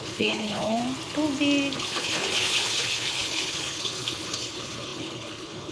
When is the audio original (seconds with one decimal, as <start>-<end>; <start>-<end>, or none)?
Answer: 0.8-1.8